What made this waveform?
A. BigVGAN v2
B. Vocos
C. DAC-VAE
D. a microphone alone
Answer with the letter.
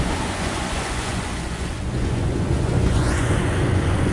B